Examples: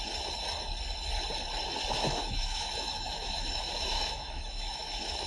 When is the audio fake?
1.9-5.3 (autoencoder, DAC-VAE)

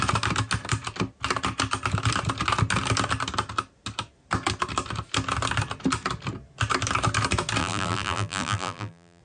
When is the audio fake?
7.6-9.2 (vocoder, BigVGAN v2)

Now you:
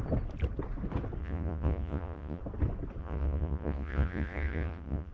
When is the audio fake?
1.2-2.4 (vocoder, Vocos); 3.0-5.1

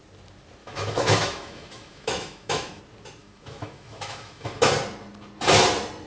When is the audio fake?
0.6-2.8 (autoencoder, DAC-VAE); 3.2-4.7

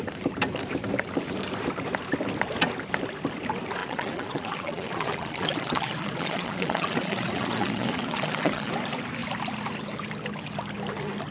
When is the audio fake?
3.8-8.7 (vocoder, Vocos)

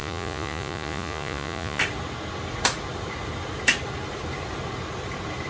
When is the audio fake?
0.0-1.8 (vocoder, Vocos)